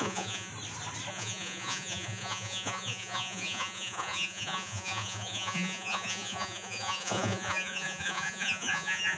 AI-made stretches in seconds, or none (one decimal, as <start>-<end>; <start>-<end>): 0.0-0.5; 1.1-9.2